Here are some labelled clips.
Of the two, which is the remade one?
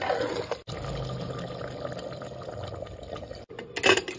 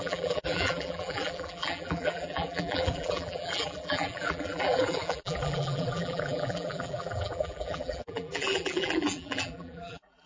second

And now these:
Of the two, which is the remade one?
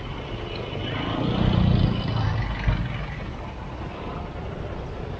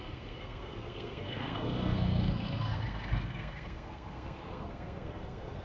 second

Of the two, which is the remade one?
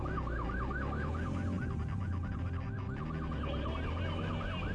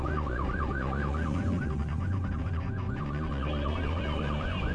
second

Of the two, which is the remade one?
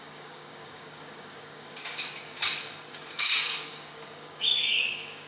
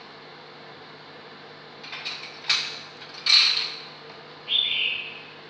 first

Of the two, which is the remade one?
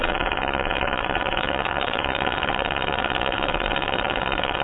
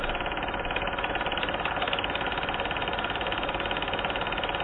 first